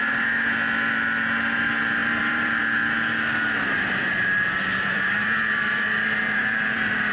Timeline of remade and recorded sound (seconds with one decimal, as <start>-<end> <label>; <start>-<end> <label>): 0.0-2.0 recorded; 2.0-2.6 remade; 2.6-4.0 recorded; 4.0-7.1 remade